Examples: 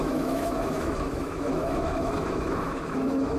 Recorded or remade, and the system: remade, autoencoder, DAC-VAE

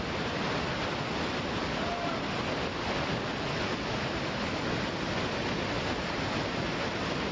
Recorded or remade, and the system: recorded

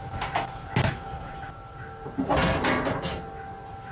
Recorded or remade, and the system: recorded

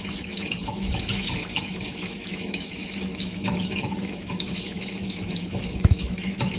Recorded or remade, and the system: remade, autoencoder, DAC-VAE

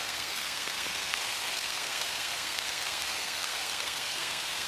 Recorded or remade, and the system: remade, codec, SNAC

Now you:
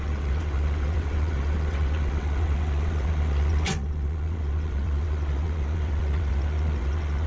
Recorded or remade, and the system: remade, vocoder, WaveNeXt